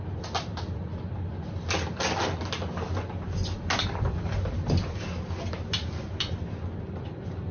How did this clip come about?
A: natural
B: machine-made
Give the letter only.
A